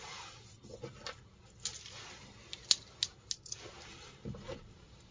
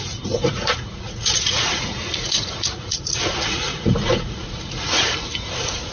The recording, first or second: first